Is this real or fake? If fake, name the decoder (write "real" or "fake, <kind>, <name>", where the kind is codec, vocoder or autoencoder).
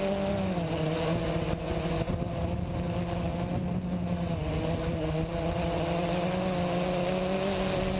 real